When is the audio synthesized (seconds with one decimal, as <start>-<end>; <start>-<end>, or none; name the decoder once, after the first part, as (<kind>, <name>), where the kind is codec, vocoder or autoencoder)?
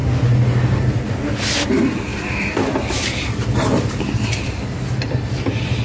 2.1-5.8 (vocoder, BigVGAN v2)